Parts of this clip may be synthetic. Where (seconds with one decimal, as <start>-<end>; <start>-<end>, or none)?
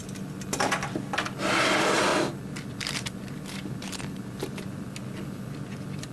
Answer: none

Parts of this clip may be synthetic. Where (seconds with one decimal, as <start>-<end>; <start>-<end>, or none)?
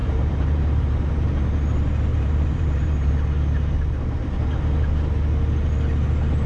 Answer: 0.0-1.1; 2.1-3.1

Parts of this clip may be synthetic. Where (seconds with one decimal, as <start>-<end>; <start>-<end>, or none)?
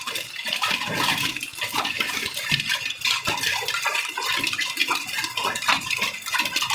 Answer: 0.0-4.8; 6.0-6.7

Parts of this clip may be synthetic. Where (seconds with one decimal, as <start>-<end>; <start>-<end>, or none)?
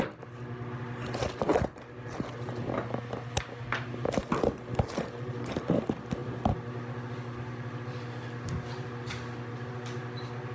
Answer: none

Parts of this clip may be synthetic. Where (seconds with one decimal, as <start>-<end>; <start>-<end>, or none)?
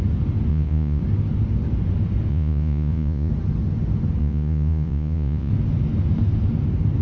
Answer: 0.5-1.0; 2.3-3.3; 4.2-5.5